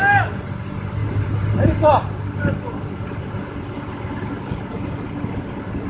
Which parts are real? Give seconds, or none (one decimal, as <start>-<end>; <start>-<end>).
0.0-5.9